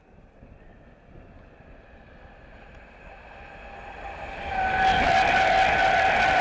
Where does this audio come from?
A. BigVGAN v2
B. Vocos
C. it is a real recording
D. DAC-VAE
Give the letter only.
C